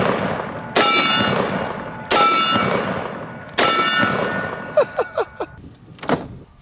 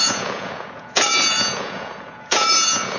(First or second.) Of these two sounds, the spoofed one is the second